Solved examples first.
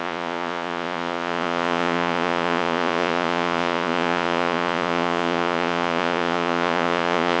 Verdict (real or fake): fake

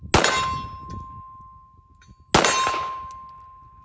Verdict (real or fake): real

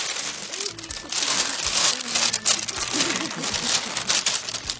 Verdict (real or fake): real